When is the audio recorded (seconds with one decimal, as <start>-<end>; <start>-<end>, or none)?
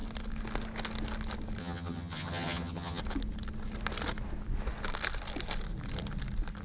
0.0-1.6; 3.0-6.6